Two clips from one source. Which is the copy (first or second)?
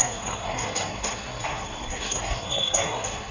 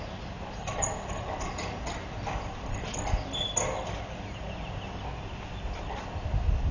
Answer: first